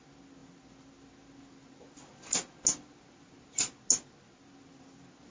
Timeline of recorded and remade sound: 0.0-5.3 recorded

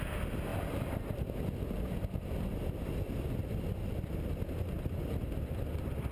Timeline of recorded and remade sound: 0.0-6.1 recorded

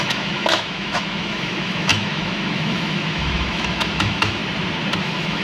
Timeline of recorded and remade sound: 0.0-4.4 remade; 4.4-5.0 recorded; 5.0-5.4 remade